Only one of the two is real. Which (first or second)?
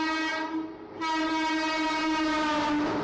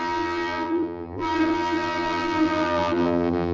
first